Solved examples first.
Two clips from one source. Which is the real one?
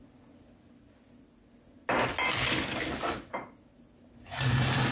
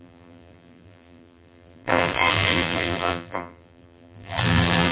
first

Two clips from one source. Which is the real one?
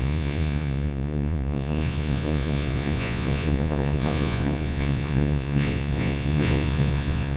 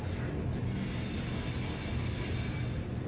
second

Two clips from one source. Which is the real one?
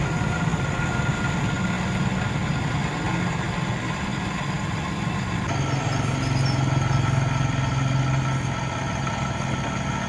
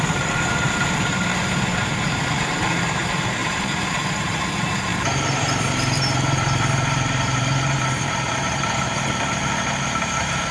first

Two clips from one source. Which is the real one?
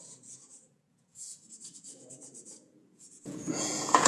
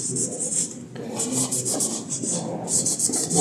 second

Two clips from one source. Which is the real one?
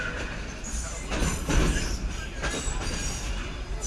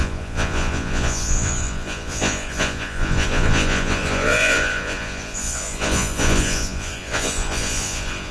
first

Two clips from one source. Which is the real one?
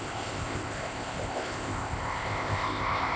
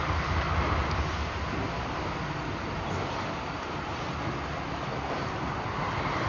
second